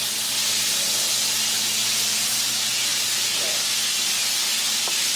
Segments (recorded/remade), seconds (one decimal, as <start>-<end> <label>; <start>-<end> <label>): 0.0-5.2 recorded